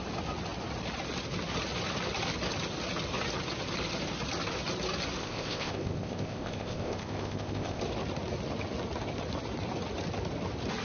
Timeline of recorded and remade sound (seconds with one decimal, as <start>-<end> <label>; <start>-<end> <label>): 0.0-5.2 recorded; 5.2-7.8 remade; 7.8-10.8 recorded